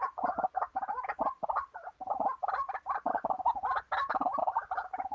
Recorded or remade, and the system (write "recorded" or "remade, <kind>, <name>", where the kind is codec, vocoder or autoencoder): recorded